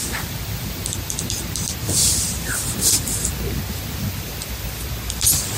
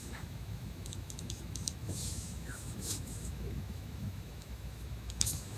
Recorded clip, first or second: first